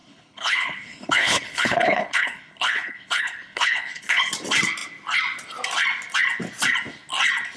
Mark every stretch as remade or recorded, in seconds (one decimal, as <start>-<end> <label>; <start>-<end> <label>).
0.0-4.3 remade; 4.3-7.6 recorded